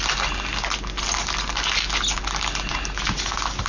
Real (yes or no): yes